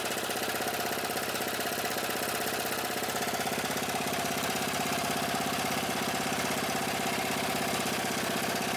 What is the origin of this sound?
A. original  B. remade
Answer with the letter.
A